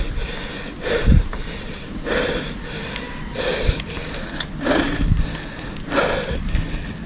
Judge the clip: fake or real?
real